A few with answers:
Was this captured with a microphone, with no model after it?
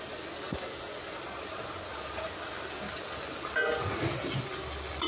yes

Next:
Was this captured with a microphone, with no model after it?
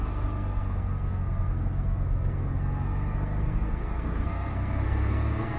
no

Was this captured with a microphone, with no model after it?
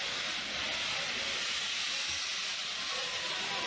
yes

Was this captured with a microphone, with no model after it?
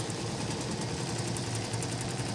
yes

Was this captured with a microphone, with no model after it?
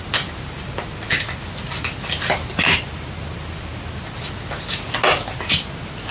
yes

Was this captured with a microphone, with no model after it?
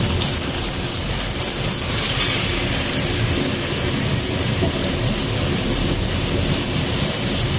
yes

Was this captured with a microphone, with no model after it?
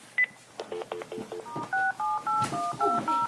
yes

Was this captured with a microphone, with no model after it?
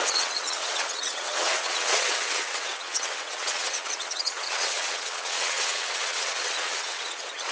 no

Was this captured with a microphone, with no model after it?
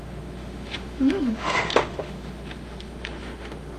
no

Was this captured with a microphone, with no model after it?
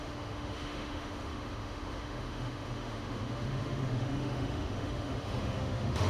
no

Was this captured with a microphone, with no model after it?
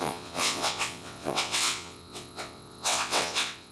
no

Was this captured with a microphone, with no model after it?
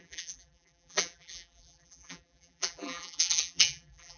no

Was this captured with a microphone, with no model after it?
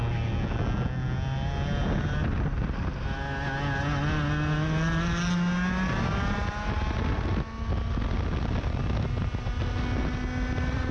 yes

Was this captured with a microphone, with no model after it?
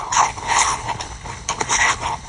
no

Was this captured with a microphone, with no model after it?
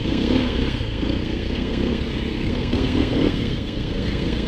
no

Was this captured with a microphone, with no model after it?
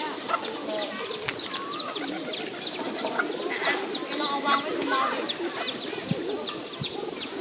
yes